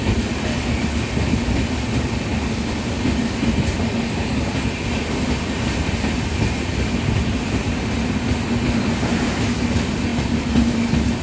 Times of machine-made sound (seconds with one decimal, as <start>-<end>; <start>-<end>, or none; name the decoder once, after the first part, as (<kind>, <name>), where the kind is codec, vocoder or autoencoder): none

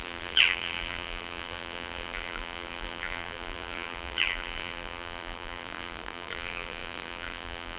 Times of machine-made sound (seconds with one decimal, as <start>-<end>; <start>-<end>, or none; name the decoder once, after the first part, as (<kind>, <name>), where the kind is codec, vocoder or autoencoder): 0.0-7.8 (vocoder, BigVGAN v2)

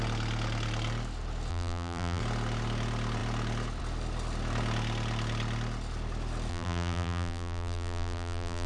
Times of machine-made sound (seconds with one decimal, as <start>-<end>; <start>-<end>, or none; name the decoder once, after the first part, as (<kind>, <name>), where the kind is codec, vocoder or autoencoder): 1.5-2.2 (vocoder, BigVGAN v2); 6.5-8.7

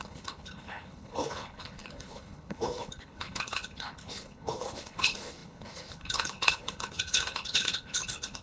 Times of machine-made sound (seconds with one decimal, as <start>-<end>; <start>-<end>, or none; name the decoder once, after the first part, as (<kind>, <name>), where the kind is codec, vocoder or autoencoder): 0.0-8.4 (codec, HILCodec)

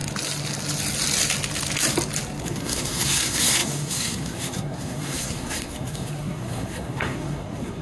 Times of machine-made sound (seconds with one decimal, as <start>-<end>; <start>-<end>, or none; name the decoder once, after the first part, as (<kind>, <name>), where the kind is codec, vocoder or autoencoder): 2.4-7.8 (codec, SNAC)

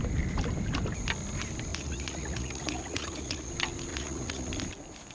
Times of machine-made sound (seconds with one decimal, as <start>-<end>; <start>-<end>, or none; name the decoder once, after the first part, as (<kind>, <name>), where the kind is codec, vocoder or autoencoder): 1.7-3.5 (vocoder, Vocos); 3.9-4.5

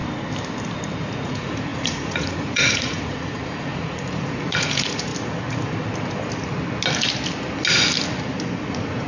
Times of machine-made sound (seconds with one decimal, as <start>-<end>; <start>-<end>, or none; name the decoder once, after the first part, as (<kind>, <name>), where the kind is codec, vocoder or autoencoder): 1.0-5.1 (vocoder, Vocos); 8.7-9.1